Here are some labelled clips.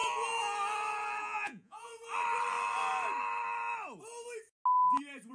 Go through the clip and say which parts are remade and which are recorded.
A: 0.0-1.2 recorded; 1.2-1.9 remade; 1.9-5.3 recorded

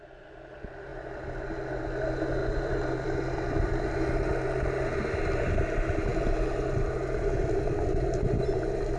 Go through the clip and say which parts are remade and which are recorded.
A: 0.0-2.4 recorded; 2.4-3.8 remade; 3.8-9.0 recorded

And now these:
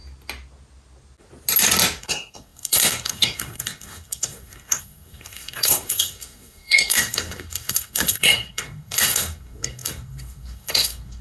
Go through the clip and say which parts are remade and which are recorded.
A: 0.0-2.0 recorded; 2.0-11.2 remade

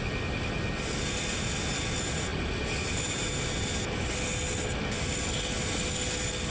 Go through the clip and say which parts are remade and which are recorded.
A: 0.0-6.5 recorded

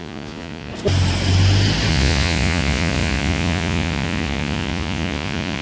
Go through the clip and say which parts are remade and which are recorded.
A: 0.0-0.7 remade; 0.7-1.9 recorded; 1.9-5.6 remade